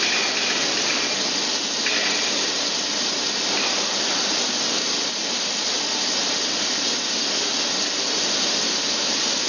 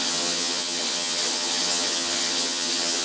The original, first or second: first